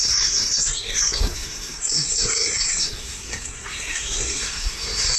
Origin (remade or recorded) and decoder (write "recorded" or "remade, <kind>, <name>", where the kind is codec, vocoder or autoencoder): remade, codec, SNAC